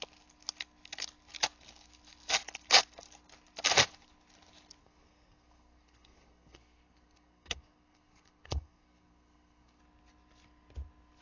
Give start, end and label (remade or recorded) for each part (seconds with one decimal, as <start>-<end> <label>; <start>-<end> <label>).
0.0-4.8 recorded; 4.8-9.8 remade; 9.8-11.2 recorded